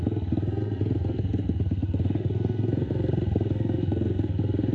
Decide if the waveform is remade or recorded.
remade